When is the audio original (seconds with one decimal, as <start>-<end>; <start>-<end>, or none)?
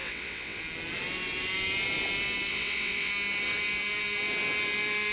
0.6-2.5; 3.1-5.1